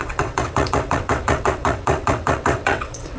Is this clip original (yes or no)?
no